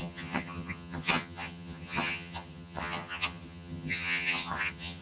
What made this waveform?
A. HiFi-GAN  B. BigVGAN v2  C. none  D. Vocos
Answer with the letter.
A